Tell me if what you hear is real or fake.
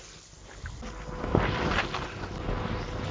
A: real